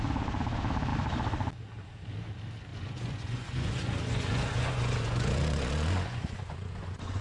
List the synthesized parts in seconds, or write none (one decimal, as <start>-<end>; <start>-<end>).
2.7-7.2